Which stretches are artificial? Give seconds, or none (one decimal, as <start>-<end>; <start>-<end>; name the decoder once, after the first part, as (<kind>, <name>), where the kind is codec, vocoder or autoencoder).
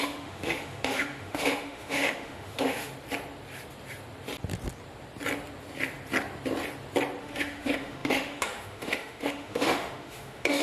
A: 0.0-2.9 (autoencoder, DAC-VAE); 7.2-10.6